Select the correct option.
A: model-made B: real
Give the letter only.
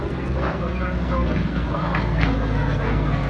A